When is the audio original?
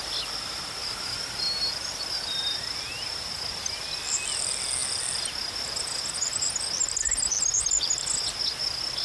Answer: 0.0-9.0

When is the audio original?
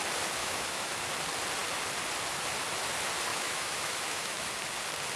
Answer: 0.0-0.4; 1.0-3.3; 4.5-5.2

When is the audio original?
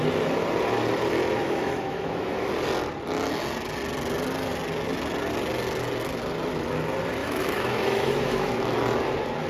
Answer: 0.0-1.4; 2.5-7.2; 8.6-9.5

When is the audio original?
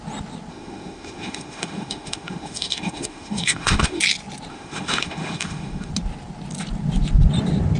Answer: 0.0-0.5; 4.0-4.5; 5.9-7.8